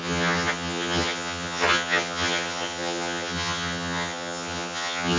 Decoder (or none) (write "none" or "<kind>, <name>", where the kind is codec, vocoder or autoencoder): vocoder, HiFi-GAN